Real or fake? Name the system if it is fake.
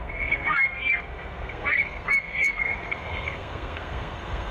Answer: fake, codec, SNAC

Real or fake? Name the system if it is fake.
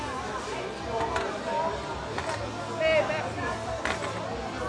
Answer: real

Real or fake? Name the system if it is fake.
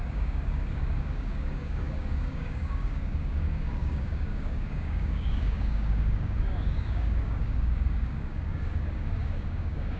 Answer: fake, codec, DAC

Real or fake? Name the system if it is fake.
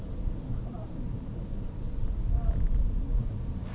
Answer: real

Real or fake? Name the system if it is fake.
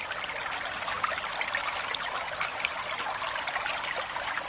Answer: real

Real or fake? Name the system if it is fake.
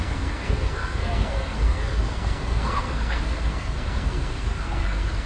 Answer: fake, codec, SNAC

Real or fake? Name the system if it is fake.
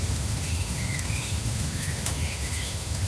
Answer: fake, autoencoder, DAC-VAE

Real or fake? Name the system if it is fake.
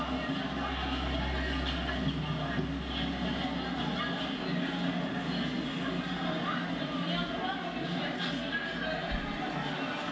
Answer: real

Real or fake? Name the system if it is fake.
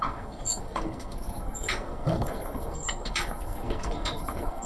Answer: fake, codec, SNAC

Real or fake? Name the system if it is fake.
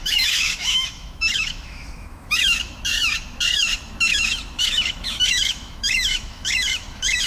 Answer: fake, autoencoder, DAC-VAE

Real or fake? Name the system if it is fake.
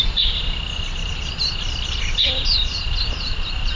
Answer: real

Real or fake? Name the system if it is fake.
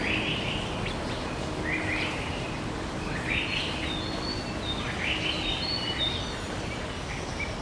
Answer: real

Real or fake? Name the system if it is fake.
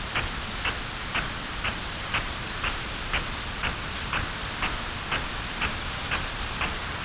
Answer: fake, vocoder, BigVGAN v2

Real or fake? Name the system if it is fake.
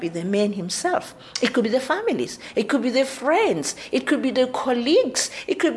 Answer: real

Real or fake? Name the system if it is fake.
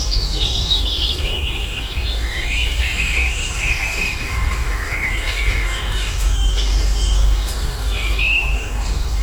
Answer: fake, codec, DAC